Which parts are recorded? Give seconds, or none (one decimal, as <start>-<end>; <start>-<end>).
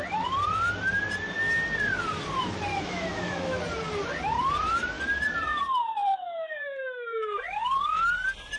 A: 0.0-2.7; 3.6-6.1; 7.4-8.6